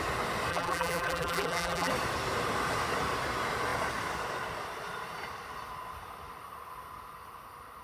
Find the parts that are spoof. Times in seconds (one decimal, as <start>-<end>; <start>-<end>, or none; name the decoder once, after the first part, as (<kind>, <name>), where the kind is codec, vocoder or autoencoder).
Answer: 0.5-1.9 (vocoder, BigVGAN v2)